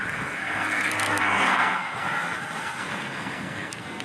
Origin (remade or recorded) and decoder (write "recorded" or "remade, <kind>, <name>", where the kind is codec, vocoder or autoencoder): remade, codec, SNAC